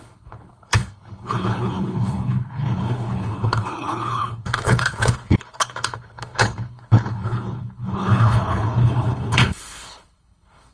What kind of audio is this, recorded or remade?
remade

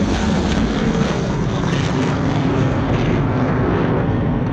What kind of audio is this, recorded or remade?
remade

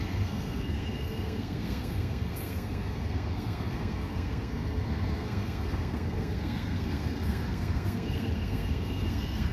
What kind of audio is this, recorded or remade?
remade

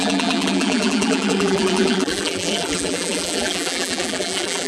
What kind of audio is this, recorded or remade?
remade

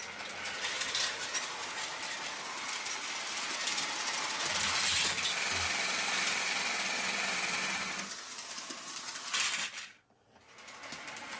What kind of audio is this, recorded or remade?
recorded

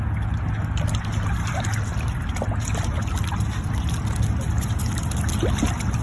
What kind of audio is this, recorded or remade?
recorded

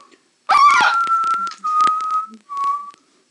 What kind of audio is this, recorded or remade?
remade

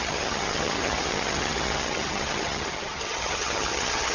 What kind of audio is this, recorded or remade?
remade